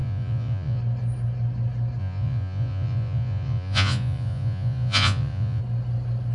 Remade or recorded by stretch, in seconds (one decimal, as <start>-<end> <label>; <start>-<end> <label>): 0.0-0.8 remade; 0.8-2.0 recorded; 2.0-5.6 remade; 5.6-6.3 recorded